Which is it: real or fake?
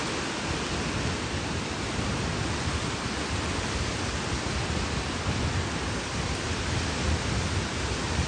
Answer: real